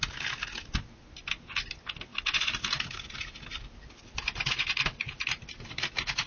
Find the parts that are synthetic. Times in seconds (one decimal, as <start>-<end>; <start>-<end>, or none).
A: none